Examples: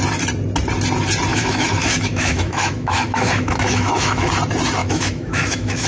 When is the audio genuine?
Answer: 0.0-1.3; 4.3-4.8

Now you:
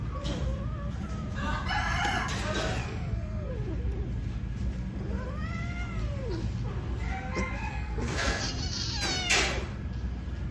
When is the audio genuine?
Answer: 0.0-2.8; 3.5-7.7; 8.4-10.5

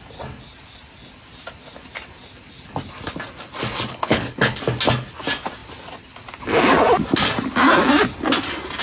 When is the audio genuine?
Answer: 0.0-3.9; 4.6-8.8

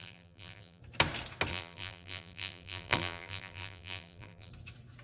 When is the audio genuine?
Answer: 0.8-1.5; 4.5-5.0